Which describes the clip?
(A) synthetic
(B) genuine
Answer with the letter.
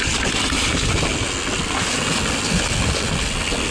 B